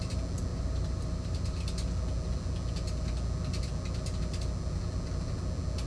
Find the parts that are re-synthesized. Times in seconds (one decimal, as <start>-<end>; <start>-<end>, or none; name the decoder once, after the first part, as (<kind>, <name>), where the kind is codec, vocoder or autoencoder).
0.5-1.6 (vocoder, BigVGAN v2)